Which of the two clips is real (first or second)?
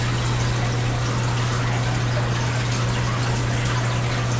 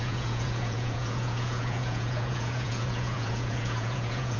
first